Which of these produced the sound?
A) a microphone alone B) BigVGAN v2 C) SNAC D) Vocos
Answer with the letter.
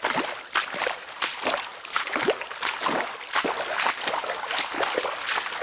A